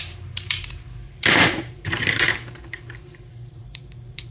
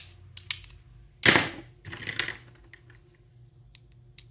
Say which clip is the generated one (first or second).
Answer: first